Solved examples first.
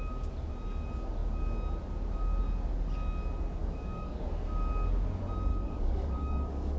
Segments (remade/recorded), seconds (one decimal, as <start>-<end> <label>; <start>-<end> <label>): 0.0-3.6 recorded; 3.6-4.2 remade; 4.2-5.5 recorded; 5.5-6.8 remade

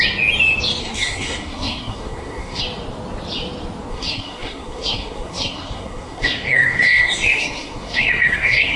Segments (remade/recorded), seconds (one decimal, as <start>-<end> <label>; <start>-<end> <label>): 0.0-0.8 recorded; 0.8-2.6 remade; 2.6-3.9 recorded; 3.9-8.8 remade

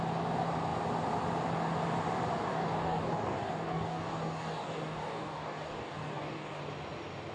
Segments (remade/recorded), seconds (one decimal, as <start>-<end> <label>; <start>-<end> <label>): 0.0-2.5 recorded; 2.5-6.6 remade; 6.6-7.3 recorded

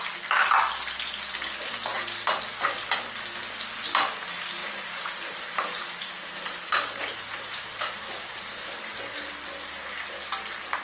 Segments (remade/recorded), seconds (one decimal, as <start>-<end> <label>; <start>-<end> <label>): 0.0-4.6 recorded; 4.6-9.0 remade; 9.0-10.8 recorded

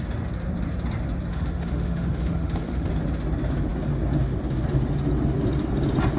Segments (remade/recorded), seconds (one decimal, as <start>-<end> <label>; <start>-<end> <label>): 0.0-1.3 recorded; 1.3-2.9 remade; 2.9-6.2 recorded

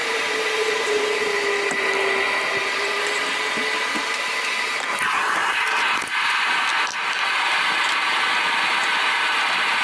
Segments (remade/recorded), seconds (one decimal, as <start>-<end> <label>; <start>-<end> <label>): 0.0-1.2 remade; 1.2-2.6 recorded; 2.6-3.2 remade; 3.2-5.4 recorded; 5.4-5.9 remade; 5.9-9.8 recorded